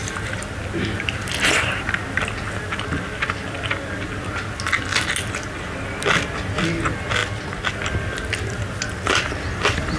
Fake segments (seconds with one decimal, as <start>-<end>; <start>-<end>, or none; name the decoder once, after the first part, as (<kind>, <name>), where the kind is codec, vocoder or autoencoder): 0.0-1.8 (vocoder, BigVGAN v2)